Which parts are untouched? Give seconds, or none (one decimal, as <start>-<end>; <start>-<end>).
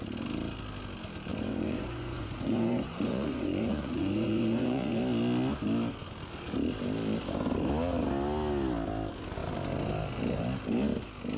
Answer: 0.0-1.3; 5.0-11.4